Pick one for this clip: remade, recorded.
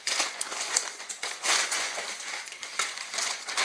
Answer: remade